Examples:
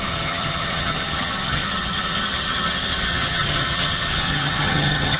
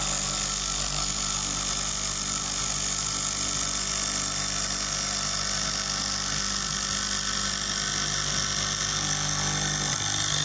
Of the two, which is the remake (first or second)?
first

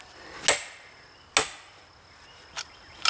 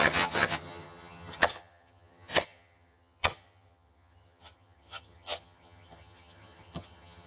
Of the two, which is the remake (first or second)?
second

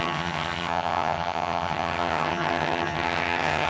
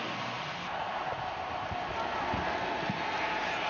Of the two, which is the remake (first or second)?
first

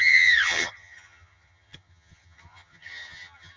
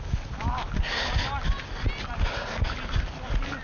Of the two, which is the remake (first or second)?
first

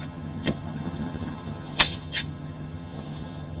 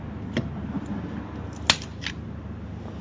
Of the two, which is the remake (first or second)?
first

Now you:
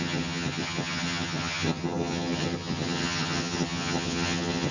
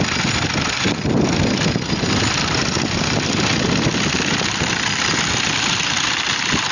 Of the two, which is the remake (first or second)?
first